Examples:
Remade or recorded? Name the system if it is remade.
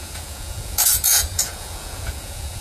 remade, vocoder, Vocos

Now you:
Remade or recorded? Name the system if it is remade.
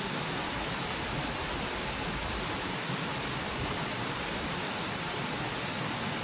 recorded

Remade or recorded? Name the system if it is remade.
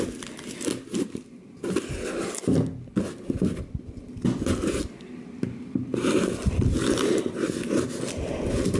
recorded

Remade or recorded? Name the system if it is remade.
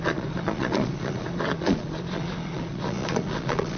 remade, vocoder, Vocos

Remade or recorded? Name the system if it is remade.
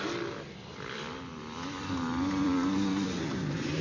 remade, vocoder, BigVGAN v2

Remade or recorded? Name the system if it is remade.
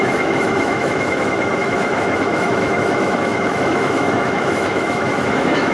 remade, autoencoder, DAC-VAE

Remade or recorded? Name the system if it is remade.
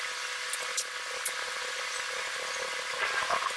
recorded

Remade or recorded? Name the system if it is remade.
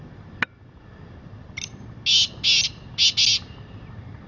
recorded